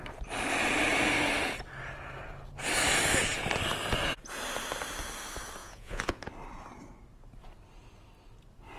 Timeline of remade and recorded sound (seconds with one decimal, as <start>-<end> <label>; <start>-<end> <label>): 0.0-5.6 recorded; 5.6-6.2 remade; 6.2-8.8 recorded